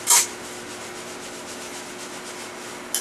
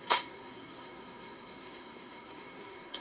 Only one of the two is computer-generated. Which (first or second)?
second